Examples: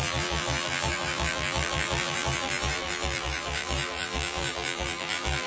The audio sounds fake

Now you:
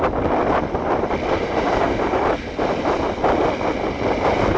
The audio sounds real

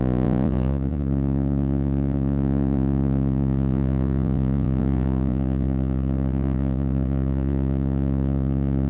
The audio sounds fake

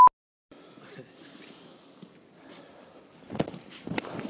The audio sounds real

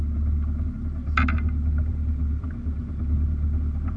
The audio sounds real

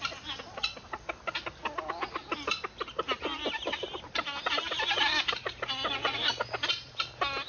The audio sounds real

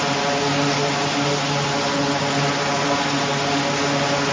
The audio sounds real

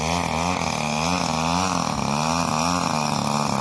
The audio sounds real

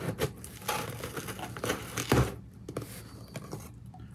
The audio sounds real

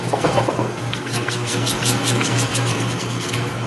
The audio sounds fake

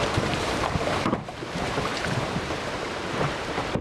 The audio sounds fake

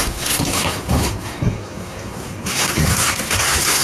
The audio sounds fake